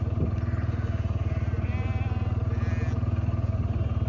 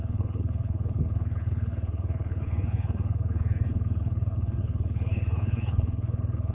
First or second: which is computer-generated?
second